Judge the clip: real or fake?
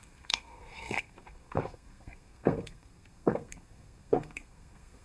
fake